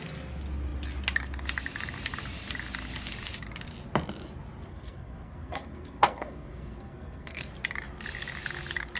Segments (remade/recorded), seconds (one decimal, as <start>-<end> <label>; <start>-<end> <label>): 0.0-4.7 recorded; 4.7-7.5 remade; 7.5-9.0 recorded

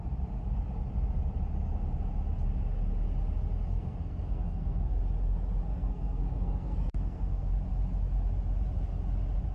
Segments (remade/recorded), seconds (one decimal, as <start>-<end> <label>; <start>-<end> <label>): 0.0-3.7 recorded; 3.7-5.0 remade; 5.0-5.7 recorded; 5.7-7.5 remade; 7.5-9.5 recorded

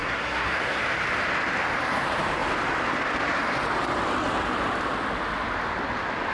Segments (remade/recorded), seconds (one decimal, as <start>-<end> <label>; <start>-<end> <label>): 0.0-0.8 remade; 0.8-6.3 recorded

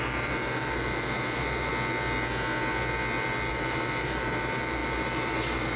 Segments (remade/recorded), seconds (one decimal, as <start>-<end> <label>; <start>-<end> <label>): 0.0-1.7 remade; 1.7-3.5 recorded; 3.5-5.8 remade

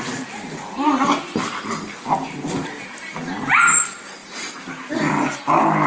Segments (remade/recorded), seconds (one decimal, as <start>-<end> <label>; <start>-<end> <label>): 0.0-5.9 recorded